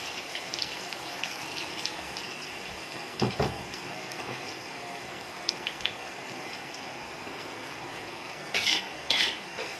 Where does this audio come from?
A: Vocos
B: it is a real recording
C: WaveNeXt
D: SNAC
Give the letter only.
D